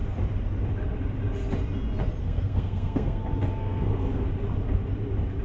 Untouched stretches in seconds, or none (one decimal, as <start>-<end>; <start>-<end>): 0.0-2.2; 3.2-3.6; 4.1-5.4